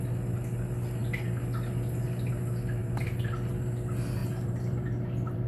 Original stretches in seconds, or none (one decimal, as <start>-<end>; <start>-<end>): 0.0-2.8; 3.5-4.2